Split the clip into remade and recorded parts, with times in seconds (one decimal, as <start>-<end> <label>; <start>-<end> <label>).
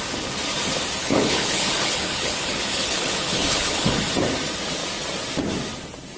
0.0-1.0 recorded; 1.0-4.0 remade; 4.0-6.2 recorded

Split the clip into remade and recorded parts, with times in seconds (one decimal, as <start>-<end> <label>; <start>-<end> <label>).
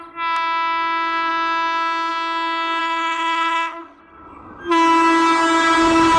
0.0-2.8 recorded; 2.8-4.0 remade; 4.0-6.2 recorded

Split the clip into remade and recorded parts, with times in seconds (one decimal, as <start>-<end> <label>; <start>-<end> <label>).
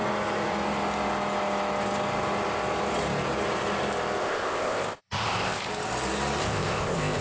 0.0-4.2 recorded; 4.2-5.7 remade; 5.7-6.4 recorded; 6.4-7.2 remade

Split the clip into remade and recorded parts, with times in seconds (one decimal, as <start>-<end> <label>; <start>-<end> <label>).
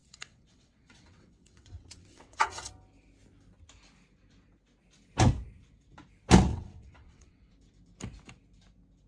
0.0-2.7 remade; 2.7-6.5 recorded; 6.5-7.5 remade; 7.5-9.1 recorded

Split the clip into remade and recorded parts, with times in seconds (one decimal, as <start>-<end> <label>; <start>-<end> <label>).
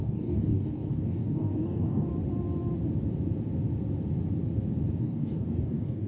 0.0-2.1 remade; 2.1-5.0 recorded; 5.0-6.1 remade